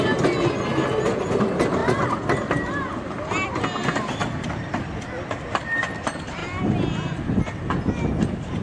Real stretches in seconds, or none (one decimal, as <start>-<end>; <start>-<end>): 0.0-4.2; 4.9-8.6